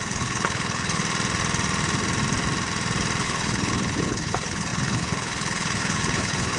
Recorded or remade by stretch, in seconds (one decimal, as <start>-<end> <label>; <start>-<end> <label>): 0.0-1.0 remade; 1.0-3.2 recorded; 3.2-6.6 remade

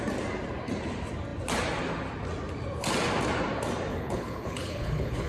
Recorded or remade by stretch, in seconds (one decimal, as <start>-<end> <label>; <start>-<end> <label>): 0.0-3.9 recorded; 3.9-5.3 remade